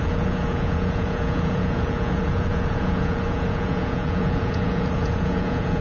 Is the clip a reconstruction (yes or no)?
yes